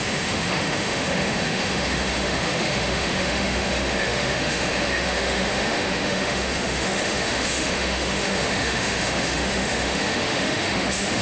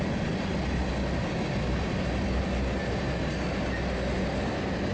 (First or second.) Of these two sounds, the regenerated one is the first